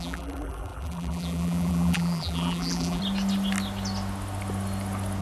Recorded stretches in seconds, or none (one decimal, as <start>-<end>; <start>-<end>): 3.0-5.2